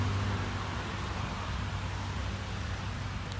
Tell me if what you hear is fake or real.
real